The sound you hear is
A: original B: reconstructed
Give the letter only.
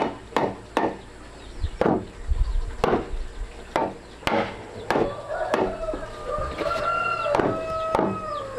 A